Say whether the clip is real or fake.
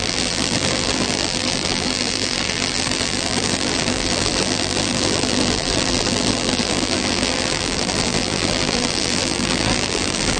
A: fake